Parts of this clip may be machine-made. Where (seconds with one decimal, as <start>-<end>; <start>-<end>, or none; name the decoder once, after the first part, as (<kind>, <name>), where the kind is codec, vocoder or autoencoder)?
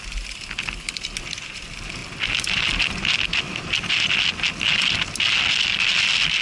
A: none